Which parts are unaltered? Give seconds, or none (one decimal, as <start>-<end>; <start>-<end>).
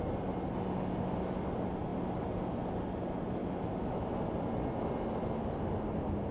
0.0-3.4; 4.1-6.3